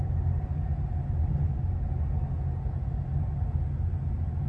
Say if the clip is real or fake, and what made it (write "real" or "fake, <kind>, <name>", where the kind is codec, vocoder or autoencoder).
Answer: real